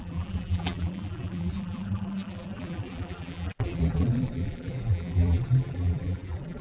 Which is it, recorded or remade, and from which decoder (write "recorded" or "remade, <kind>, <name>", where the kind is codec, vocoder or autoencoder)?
remade, vocoder, BigVGAN v2